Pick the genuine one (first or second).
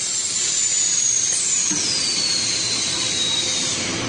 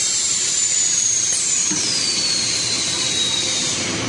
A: first